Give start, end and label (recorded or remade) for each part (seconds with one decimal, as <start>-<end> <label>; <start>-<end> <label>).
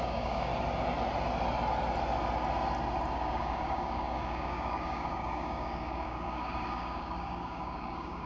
0.0-0.5 remade; 0.5-3.1 recorded; 3.1-8.3 remade